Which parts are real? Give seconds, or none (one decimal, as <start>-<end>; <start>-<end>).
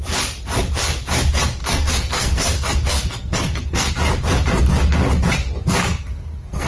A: 0.0-1.6; 3.9-5.8